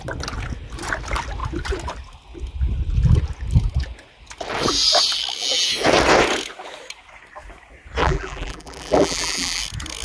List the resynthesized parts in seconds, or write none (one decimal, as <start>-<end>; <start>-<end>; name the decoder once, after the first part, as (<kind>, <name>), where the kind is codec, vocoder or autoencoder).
8.0-9.6 (vocoder, BigVGAN v2)